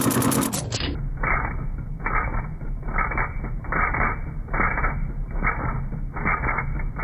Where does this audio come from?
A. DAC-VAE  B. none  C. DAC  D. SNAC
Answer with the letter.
B